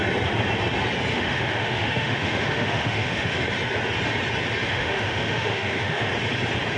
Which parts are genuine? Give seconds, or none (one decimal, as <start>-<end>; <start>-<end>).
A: 0.0-1.1; 3.4-4.6; 6.1-6.8